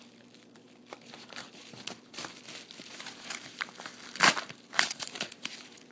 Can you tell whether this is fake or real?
fake